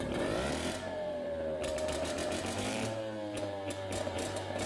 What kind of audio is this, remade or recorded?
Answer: remade